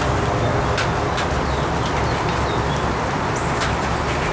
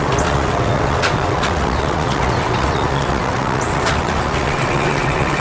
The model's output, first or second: second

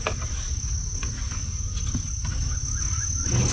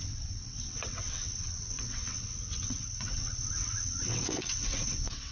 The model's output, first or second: second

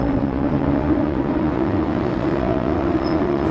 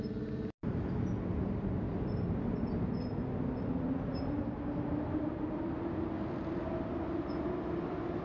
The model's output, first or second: first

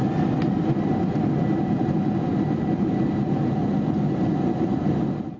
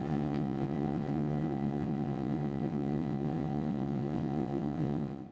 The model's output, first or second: second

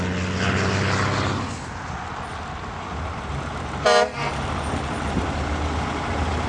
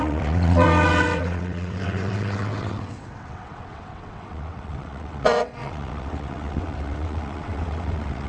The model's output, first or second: second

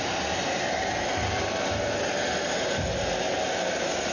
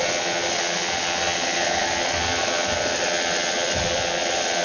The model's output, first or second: second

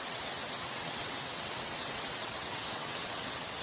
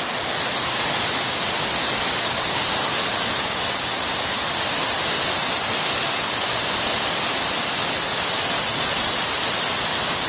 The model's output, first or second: first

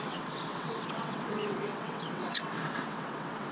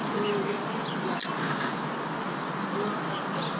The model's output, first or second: first